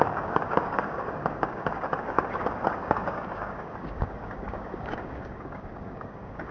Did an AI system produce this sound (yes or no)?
yes